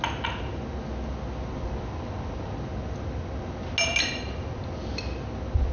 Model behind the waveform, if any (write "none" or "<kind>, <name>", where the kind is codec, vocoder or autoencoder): none